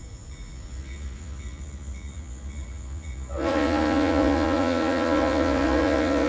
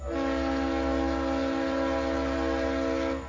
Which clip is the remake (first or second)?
first